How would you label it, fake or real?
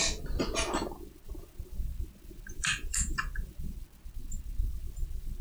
fake